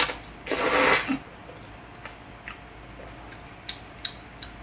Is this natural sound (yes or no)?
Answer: yes